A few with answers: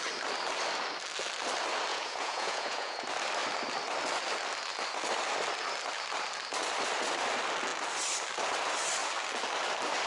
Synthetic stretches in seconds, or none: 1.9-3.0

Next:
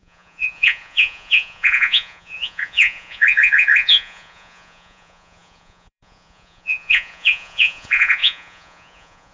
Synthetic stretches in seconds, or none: 0.0-9.3

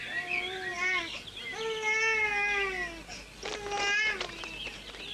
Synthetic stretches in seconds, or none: none

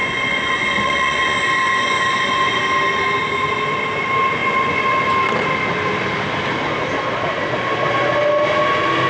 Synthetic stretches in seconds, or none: 0.0-2.6; 4.4-5.0

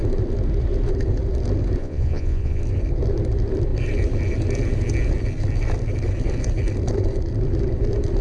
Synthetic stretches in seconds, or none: 1.8-2.6

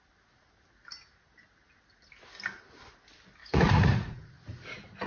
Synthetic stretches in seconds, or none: 3.4-5.1

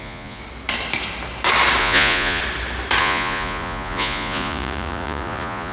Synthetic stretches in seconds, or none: 0.0-0.4; 1.8-2.4; 3.0-5.7

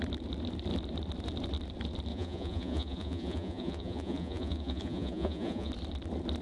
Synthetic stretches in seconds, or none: 2.1-5.7